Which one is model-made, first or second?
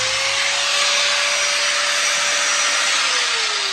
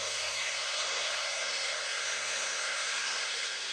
second